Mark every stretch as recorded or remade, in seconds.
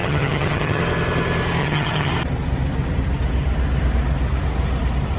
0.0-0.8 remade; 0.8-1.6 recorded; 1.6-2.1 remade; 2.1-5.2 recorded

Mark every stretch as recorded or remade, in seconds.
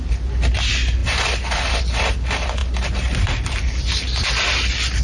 0.0-5.0 recorded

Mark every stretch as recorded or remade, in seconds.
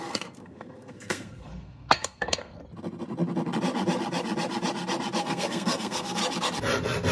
0.0-2.6 remade; 2.6-5.2 recorded; 5.2-6.2 remade; 6.2-7.1 recorded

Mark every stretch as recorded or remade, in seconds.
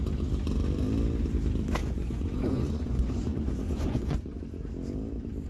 0.0-1.8 recorded; 1.8-4.4 remade; 4.4-5.5 recorded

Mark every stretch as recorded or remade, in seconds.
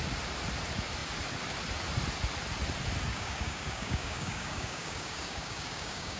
0.0-3.1 recorded; 3.1-6.2 remade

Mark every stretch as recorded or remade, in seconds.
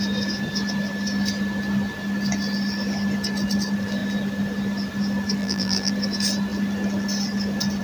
0.0-5.4 recorded; 5.4-5.9 remade; 5.9-7.8 recorded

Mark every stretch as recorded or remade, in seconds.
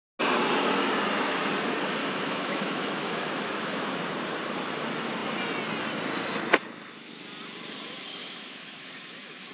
0.0-2.0 recorded; 2.0-3.9 remade; 3.9-8.2 recorded; 8.2-9.5 remade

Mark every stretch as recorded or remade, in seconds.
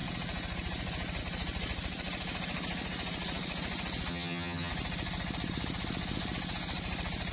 0.0-4.1 recorded; 4.1-4.7 remade; 4.7-7.3 recorded